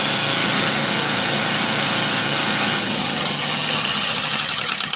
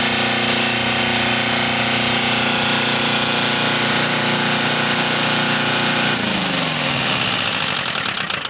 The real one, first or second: second